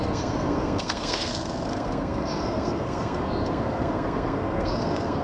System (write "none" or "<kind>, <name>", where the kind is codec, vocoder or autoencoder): codec, SNAC